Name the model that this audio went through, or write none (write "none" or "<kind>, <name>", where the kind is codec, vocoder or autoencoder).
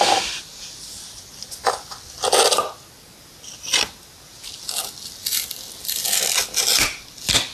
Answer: none